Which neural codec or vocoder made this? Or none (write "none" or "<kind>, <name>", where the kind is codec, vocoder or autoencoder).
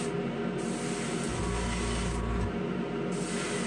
none